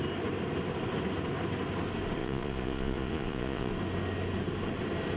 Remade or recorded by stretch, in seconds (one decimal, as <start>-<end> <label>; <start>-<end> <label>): 0.0-2.2 recorded; 2.2-3.7 remade; 3.7-5.2 recorded